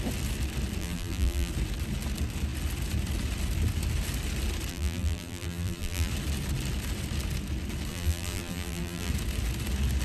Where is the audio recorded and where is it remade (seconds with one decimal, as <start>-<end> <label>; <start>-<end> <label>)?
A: 0.0-0.8 recorded; 0.8-1.5 remade; 1.5-4.7 recorded; 4.7-6.1 remade; 6.1-7.9 recorded; 7.9-9.1 remade; 9.1-10.0 recorded